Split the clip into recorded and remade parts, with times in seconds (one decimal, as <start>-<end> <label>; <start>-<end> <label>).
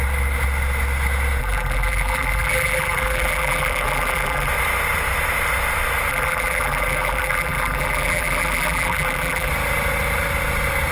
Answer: 0.0-1.4 recorded; 1.4-4.5 remade; 4.5-6.1 recorded; 6.1-9.5 remade; 9.5-10.9 recorded